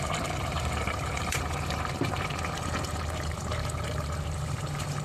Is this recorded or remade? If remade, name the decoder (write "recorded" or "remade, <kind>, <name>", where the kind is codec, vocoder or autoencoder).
remade, vocoder, BigVGAN v2